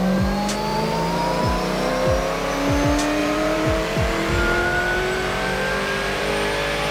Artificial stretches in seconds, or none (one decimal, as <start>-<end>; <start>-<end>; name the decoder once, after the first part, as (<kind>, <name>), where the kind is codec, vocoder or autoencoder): 0.7-1.4 (vocoder, BigVGAN v2); 3.2-6.3